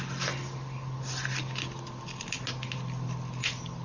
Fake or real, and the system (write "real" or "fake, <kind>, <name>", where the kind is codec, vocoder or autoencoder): real